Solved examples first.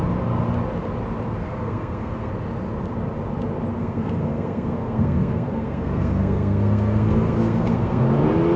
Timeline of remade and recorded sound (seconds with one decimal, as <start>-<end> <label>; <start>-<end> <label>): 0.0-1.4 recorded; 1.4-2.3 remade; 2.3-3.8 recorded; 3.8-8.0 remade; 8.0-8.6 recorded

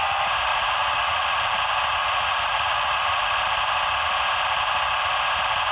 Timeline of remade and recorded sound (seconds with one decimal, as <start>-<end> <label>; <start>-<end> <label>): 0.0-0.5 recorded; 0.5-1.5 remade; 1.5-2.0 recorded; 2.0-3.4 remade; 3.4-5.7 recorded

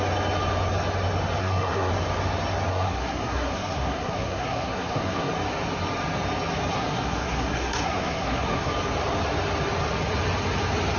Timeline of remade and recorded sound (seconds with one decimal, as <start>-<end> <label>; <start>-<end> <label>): 0.0-1.4 recorded; 1.4-1.9 remade; 1.9-2.7 recorded; 2.7-5.3 remade; 5.3-6.7 recorded; 6.7-8.7 remade; 8.7-11.0 recorded

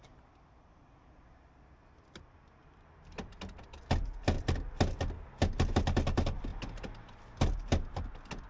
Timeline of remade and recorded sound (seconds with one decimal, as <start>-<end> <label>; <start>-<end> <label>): 0.0-8.5 recorded

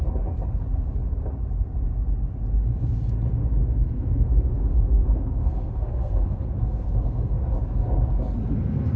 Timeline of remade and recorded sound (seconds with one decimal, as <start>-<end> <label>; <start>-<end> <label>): 0.0-3.6 recorded; 3.6-7.5 remade; 7.5-9.0 recorded